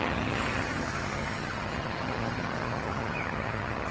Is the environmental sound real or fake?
fake